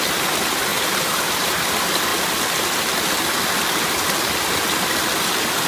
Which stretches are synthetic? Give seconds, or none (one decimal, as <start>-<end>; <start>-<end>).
0.7-1.6